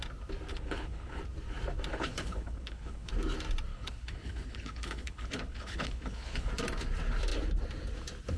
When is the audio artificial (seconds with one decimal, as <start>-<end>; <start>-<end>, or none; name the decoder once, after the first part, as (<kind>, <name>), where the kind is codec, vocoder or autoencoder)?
0.5-1.2 (codec, HILCodec); 1.9-3.1; 3.7-6.5